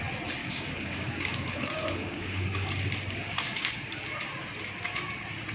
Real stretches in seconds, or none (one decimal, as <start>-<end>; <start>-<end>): 0.0-0.4; 3.7-5.5